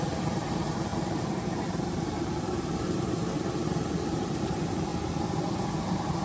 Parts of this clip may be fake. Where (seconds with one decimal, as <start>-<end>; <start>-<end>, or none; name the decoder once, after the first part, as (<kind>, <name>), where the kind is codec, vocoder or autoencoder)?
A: 0.0-4.9 (vocoder, BigVGAN v2); 5.8-6.2